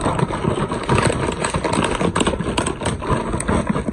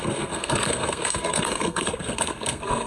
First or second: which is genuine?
first